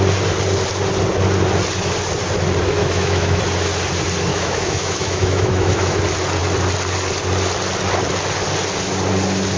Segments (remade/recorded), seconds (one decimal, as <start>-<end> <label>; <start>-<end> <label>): 0.0-2.8 recorded; 2.8-3.4 remade; 3.4-4.3 recorded; 4.3-6.0 remade; 6.0-9.6 recorded